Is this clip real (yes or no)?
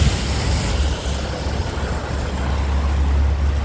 yes